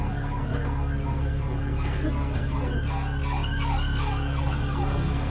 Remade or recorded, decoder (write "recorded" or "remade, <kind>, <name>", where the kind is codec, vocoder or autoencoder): remade, codec, SNAC